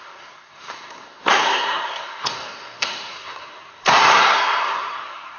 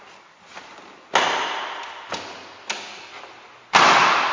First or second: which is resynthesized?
first